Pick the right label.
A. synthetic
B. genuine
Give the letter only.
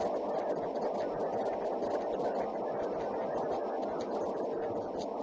B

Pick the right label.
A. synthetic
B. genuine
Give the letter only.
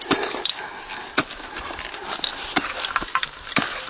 B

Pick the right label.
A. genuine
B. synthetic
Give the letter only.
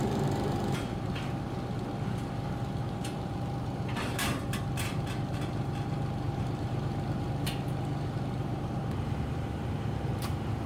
B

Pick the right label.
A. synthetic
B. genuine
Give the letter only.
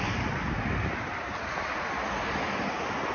B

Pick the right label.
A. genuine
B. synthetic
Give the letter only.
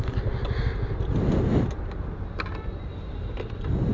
A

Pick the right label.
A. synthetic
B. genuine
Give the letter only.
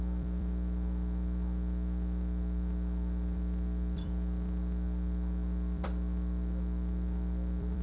A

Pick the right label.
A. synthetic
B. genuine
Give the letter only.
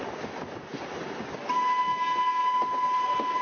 B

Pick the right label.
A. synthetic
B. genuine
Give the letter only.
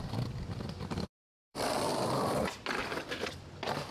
A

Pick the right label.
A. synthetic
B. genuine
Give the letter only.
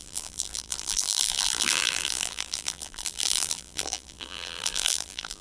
A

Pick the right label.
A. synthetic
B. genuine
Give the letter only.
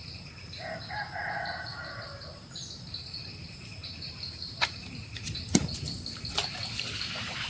A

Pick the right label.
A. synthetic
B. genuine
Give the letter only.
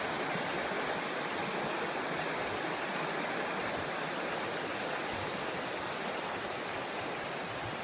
B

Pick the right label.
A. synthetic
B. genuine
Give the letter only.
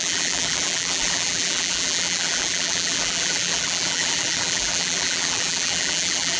A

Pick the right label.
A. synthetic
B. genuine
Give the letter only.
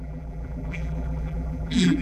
A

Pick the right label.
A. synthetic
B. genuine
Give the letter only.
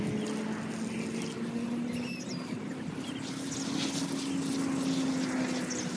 B